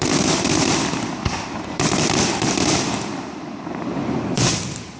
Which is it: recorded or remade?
remade